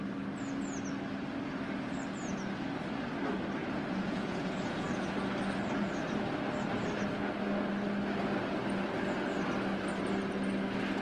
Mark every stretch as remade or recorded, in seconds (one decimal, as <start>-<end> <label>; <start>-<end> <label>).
0.0-3.6 recorded; 3.6-5.1 remade; 5.1-11.0 recorded